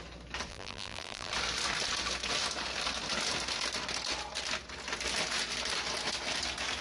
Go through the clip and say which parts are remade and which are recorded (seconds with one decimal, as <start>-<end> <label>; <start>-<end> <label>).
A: 0.0-0.5 recorded; 0.5-1.3 remade; 1.3-6.8 recorded